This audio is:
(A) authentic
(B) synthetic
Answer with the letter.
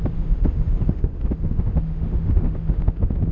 B